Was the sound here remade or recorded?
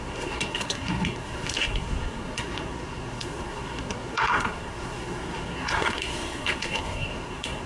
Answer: remade